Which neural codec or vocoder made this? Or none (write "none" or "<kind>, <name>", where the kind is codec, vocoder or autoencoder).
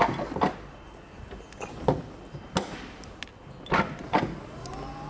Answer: none